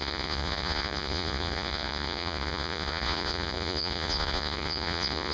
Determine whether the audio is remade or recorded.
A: remade